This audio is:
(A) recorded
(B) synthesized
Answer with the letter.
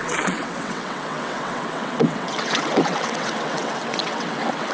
B